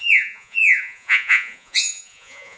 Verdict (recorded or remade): remade